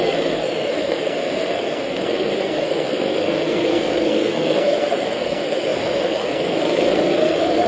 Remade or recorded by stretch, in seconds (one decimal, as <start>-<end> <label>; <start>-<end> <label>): 0.0-7.7 remade